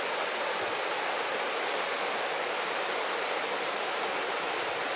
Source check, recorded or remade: recorded